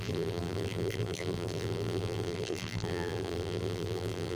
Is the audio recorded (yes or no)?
no